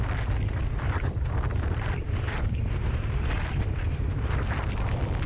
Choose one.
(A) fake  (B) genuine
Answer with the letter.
A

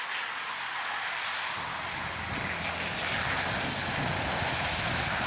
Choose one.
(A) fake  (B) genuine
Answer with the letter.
B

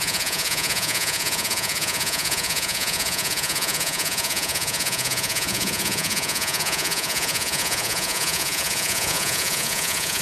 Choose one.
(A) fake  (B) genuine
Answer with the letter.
A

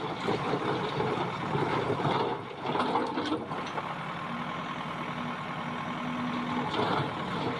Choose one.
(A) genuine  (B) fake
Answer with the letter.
A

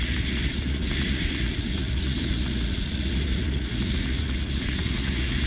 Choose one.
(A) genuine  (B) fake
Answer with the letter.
B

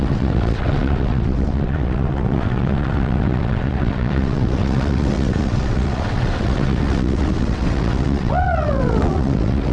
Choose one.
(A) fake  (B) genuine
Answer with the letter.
A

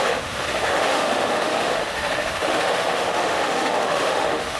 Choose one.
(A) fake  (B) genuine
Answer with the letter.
A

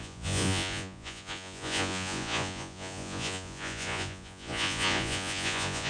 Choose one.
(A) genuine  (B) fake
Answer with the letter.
B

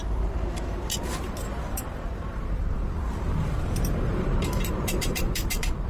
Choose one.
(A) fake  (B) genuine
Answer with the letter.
A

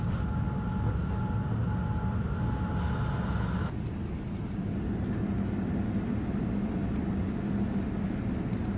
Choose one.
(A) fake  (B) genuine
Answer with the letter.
B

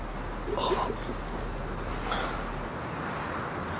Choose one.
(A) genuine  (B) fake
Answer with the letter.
A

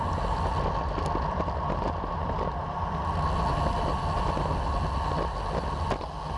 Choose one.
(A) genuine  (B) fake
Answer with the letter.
A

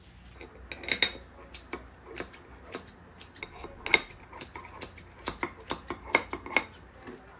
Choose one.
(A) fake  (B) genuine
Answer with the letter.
B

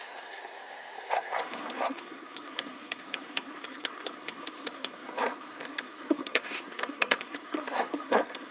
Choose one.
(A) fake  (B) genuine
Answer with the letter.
A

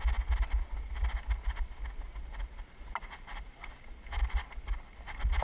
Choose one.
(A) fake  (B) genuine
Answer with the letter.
B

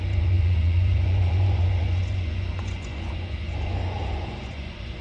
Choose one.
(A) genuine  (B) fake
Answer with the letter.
B